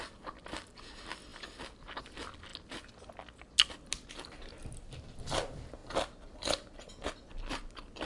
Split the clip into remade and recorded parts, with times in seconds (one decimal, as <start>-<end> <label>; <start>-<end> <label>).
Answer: 0.0-8.1 recorded